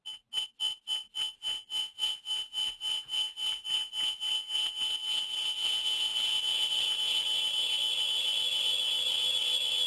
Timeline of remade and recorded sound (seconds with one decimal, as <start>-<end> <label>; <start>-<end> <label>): 0.0-9.9 recorded